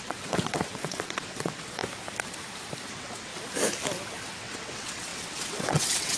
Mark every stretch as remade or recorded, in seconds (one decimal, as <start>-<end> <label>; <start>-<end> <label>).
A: 0.0-1.8 remade; 1.8-2.9 recorded; 2.9-3.3 remade; 3.3-4.4 recorded; 4.4-6.2 remade